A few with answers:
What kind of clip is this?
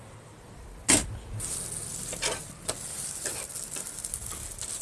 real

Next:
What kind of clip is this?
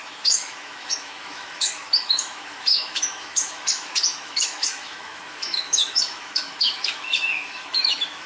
fake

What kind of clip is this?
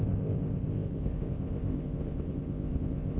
fake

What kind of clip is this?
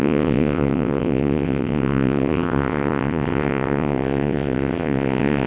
fake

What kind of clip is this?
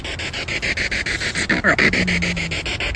real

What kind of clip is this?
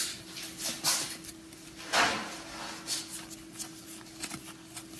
real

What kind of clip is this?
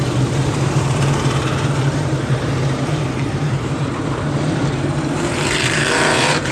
fake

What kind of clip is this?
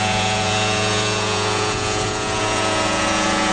fake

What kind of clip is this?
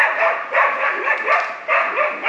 real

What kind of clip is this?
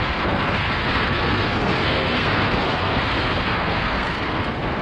fake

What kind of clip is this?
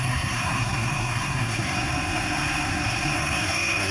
fake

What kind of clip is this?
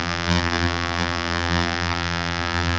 fake